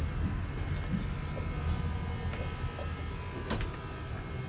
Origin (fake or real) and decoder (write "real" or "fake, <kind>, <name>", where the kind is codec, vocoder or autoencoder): real